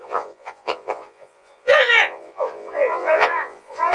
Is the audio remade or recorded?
remade